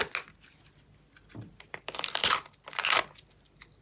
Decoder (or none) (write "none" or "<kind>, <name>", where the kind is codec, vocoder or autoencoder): none